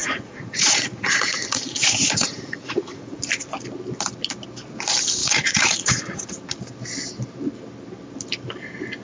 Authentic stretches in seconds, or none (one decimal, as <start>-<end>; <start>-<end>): 3.2-5.2; 6.3-9.0